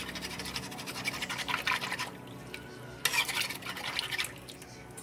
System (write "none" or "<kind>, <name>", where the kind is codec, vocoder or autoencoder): none